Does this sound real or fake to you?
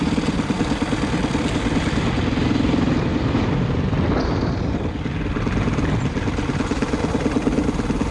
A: real